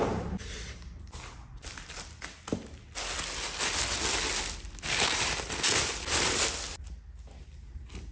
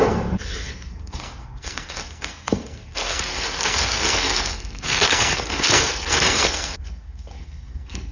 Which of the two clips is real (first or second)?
first